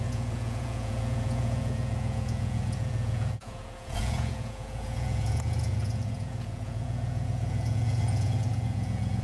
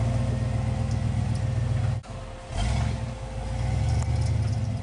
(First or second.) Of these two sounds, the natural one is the second